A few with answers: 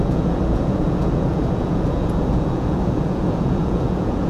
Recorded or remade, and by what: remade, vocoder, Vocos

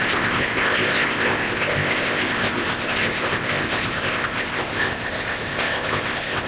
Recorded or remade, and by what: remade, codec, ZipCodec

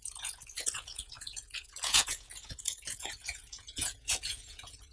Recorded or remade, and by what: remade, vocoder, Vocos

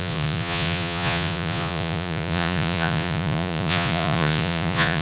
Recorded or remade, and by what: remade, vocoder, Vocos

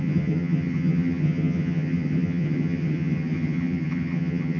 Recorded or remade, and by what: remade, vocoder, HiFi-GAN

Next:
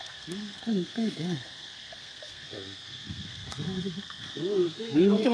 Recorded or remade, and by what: remade, codec, SNAC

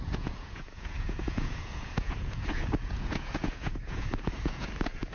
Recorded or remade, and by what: remade, vocoder, Vocos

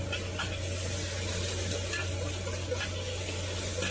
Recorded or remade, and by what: recorded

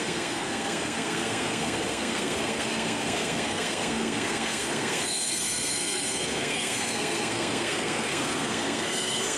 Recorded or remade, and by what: remade, codec, SNAC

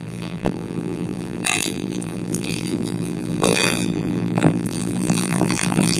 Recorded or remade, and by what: remade, vocoder, BigVGAN v2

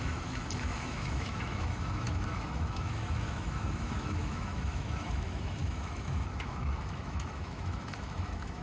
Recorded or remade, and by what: remade, autoencoder, DAC-VAE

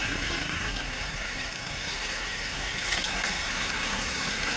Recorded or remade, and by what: remade, codec, SNAC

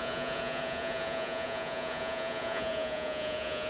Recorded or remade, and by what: remade, vocoder, Vocos